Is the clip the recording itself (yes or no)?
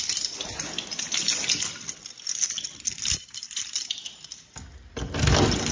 yes